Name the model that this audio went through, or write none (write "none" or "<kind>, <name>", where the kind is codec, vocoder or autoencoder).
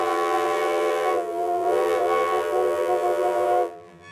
vocoder, BigVGAN v2